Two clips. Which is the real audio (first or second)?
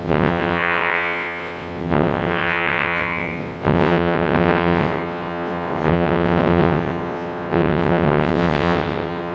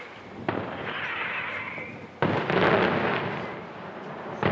second